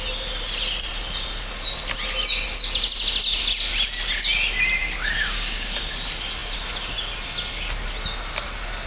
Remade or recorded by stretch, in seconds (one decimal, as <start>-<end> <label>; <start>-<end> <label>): 0.0-4.8 recorded; 4.8-5.8 remade; 5.8-8.9 recorded